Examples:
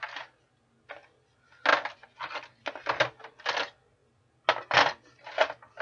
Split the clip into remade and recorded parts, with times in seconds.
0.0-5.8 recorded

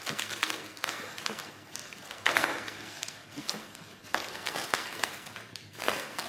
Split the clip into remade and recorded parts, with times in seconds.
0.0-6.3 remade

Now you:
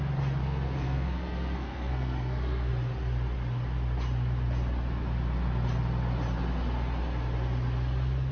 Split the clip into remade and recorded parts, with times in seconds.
0.0-0.4 recorded; 0.4-2.7 remade; 2.7-8.3 recorded

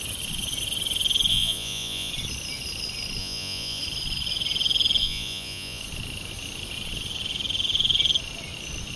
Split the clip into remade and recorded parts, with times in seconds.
0.0-1.3 recorded; 1.3-2.1 remade; 2.1-3.2 recorded; 3.2-3.8 remade; 3.8-5.0 recorded; 5.0-5.8 remade; 5.8-9.0 recorded

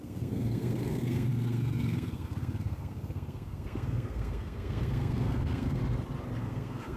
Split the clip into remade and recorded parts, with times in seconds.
0.0-5.8 remade; 5.8-6.4 recorded; 6.4-7.0 remade

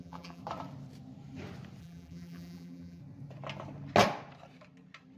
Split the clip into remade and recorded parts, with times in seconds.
0.0-0.4 remade; 0.4-1.8 recorded; 1.8-3.0 remade; 3.0-5.2 recorded

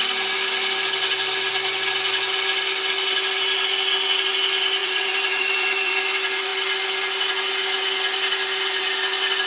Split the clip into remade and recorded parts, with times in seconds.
0.0-4.8 recorded; 4.8-5.9 remade; 5.9-9.5 recorded